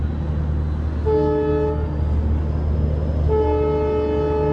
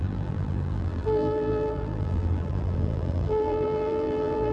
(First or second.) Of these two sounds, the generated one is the second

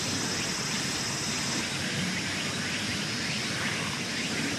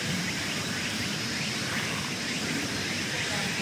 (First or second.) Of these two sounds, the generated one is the second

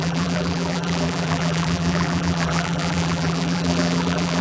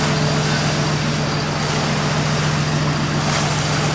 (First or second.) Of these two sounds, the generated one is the first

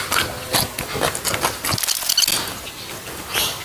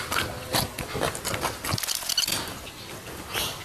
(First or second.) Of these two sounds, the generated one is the second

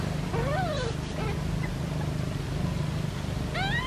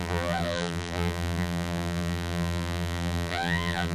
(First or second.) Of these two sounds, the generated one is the second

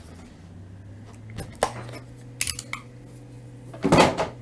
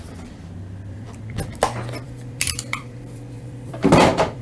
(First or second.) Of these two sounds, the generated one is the second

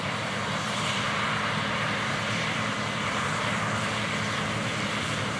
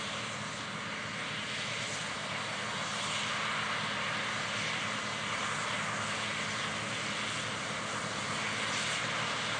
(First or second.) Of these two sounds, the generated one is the first